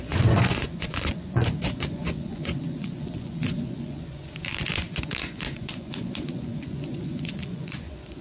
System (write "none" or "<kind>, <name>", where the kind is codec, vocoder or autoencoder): vocoder, Vocos